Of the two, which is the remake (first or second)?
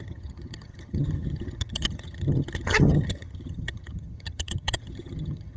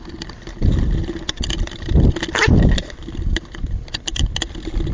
first